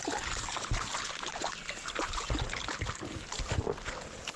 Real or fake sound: real